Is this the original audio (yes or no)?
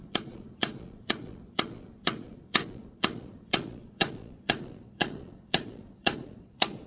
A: no